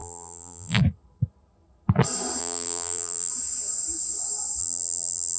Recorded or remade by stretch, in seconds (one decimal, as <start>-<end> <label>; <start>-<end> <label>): 0.0-0.8 remade; 0.8-2.4 recorded; 2.4-3.3 remade; 3.3-4.6 recorded; 4.6-5.4 remade